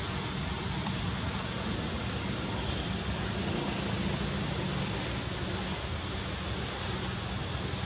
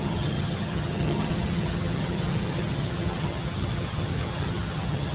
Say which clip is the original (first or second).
first